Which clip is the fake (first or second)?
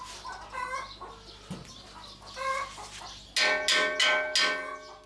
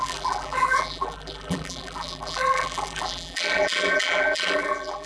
second